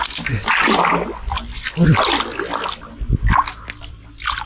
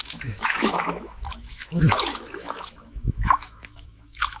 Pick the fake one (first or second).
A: second